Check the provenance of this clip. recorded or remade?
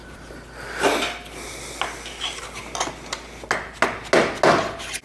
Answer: recorded